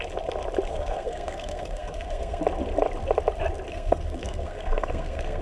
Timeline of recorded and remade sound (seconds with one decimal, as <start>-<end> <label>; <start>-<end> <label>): 0.0-0.7 recorded; 0.7-2.4 remade; 2.4-3.7 recorded; 3.7-5.4 remade

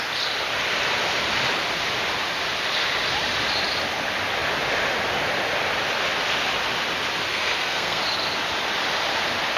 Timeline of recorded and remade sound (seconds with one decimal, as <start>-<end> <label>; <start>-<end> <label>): 0.0-7.3 recorded; 7.3-8.0 remade; 8.0-9.6 recorded

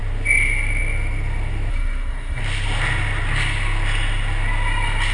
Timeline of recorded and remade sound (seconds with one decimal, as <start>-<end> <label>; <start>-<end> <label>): 0.0-1.7 recorded; 1.7-2.4 remade; 2.4-5.1 recorded

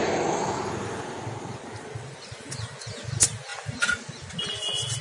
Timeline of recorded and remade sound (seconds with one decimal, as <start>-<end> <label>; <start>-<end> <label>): 0.0-5.0 recorded

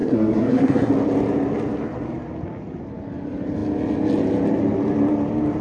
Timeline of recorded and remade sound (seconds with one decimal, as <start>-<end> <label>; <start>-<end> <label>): 0.0-0.9 remade; 0.9-5.6 recorded

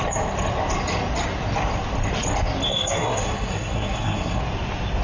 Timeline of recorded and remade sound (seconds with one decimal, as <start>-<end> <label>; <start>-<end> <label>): 0.0-2.7 recorded; 2.7-4.4 remade; 4.4-5.0 recorded